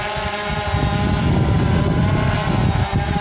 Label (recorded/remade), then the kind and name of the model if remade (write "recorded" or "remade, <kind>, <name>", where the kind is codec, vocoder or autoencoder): recorded